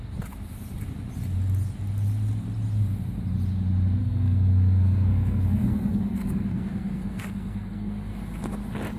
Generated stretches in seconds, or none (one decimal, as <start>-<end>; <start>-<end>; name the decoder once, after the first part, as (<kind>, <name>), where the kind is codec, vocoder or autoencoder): 4.0-8.2 (codec, SNAC)